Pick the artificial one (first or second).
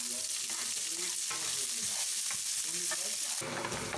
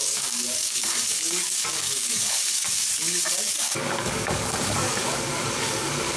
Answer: second